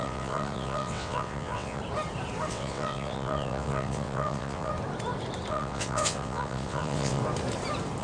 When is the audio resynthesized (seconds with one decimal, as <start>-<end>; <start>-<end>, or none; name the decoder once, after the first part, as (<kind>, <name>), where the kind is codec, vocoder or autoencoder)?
0.0-1.8 (vocoder, WaveNeXt); 2.5-4.7; 5.5-7.2